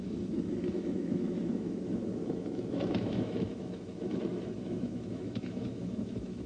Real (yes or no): no